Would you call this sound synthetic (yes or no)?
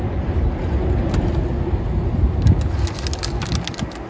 no